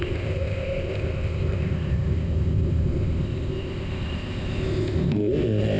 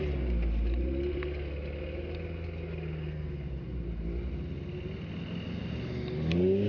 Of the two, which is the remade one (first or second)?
first